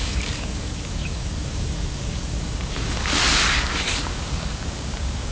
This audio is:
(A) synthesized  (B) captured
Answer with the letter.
A